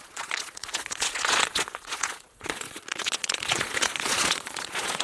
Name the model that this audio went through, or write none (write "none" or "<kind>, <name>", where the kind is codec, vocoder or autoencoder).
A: vocoder, Vocos